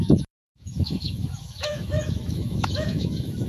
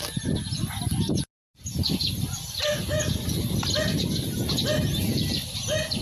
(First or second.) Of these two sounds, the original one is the second